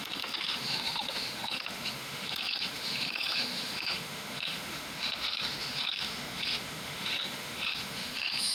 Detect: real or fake fake